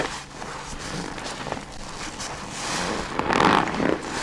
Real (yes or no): yes